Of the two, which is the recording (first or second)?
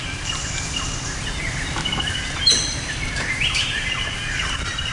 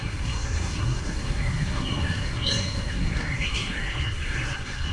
first